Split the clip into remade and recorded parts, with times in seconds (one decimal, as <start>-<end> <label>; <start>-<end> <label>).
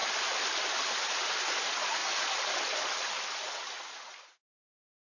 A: 0.0-5.0 recorded